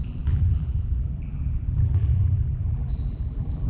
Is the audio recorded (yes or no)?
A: no